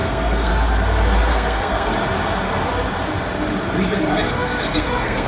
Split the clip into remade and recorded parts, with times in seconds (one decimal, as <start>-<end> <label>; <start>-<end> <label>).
0.0-0.5 remade; 0.5-1.3 recorded; 1.3-1.9 remade; 1.9-4.1 recorded; 4.1-5.3 remade